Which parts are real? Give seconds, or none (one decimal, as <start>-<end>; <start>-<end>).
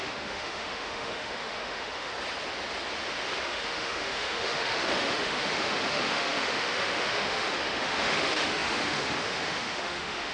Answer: 2.1-3.4